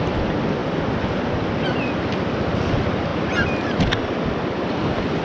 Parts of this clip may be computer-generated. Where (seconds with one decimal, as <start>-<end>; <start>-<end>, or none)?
none